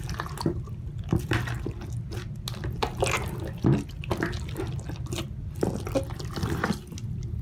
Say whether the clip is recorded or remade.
recorded